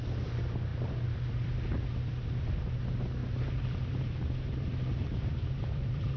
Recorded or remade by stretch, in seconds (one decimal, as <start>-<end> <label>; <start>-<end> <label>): 0.0-0.7 recorded; 0.7-2.4 remade; 2.4-3.2 recorded; 3.2-6.2 remade